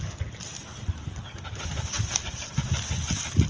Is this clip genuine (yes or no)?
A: yes